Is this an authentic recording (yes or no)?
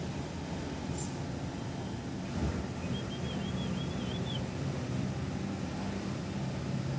yes